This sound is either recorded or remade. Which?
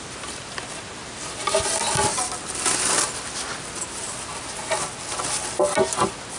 recorded